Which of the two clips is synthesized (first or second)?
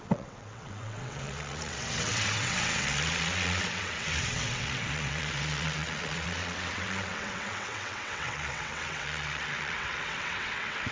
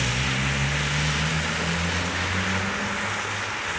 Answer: first